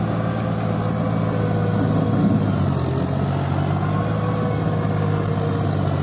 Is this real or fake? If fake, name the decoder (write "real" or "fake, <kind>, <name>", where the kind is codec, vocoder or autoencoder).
real